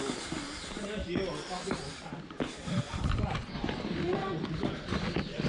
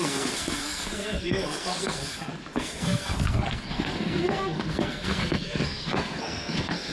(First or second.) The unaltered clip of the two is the first